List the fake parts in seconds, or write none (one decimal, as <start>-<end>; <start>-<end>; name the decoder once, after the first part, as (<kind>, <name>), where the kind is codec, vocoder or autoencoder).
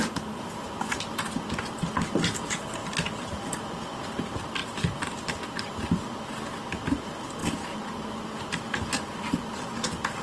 2.8-3.4 (vocoder, BigVGAN v2); 4.6-5.7